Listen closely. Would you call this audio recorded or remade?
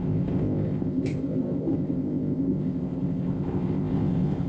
remade